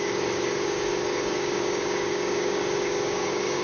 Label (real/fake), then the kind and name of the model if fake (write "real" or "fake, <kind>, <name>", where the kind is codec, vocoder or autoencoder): fake, codec, DAC